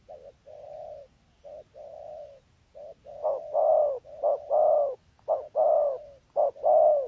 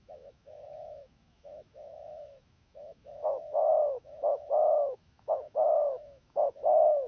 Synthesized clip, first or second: second